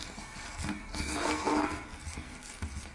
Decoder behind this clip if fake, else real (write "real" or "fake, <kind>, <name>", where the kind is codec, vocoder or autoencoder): fake, codec, SNAC